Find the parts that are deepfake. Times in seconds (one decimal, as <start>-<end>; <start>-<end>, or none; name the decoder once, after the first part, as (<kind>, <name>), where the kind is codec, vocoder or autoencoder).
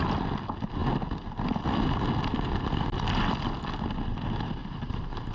4.6-5.3 (vocoder, BigVGAN v2)